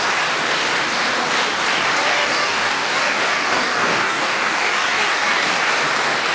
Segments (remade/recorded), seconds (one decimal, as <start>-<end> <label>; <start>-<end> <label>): 0.0-2.1 recorded; 2.1-5.6 remade; 5.6-6.3 recorded